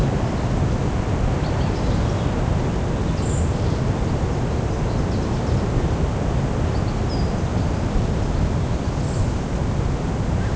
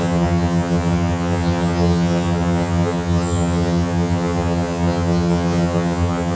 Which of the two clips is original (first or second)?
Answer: first